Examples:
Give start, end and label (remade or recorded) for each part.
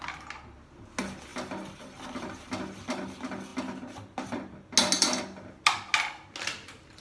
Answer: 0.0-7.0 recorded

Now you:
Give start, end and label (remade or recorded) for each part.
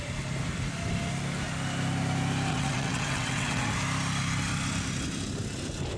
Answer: 0.0-2.5 recorded; 2.5-3.7 remade; 3.7-6.0 recorded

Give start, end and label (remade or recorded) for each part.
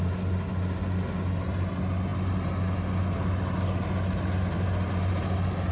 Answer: 0.0-5.7 recorded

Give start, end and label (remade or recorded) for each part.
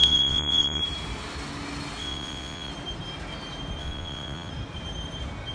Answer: 0.0-0.8 remade; 0.8-2.0 recorded; 2.0-2.7 remade; 2.7-3.8 recorded; 3.8-4.5 remade; 4.5-5.5 recorded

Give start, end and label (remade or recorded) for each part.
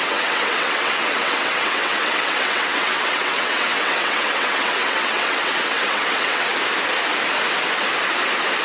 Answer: 0.0-6.5 remade; 6.5-8.6 recorded